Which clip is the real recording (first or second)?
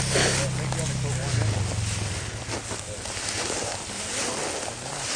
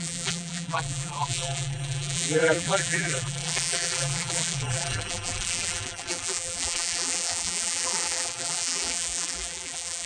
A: first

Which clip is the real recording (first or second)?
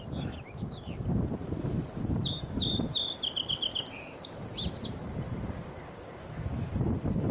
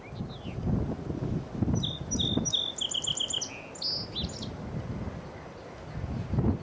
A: second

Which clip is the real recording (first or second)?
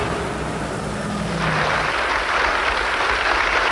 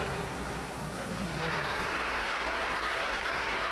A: first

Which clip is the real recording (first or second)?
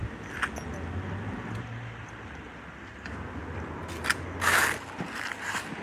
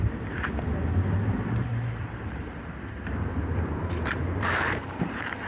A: first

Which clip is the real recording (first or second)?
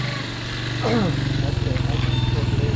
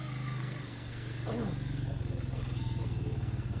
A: first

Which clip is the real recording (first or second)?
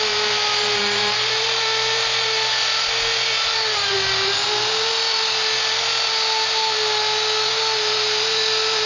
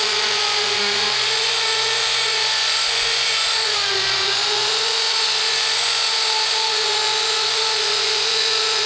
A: first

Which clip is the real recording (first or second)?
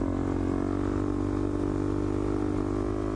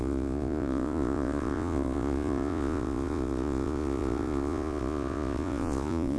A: first